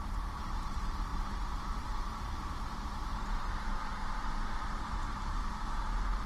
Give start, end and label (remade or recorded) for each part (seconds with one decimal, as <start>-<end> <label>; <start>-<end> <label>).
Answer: 0.0-6.3 remade